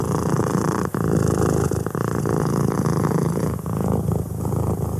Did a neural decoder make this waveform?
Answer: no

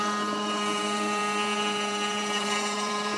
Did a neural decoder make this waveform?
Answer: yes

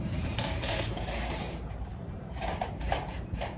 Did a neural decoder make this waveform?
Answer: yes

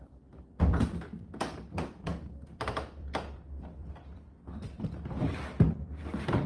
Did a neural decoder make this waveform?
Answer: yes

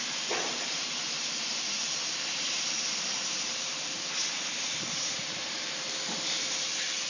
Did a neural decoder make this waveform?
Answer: yes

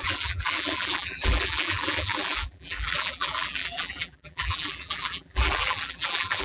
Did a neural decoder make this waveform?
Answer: yes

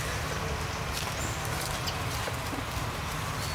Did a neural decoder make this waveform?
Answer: no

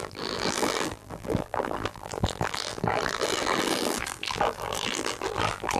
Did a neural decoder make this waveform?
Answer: yes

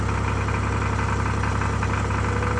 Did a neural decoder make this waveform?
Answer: no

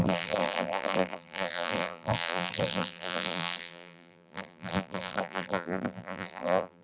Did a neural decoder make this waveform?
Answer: yes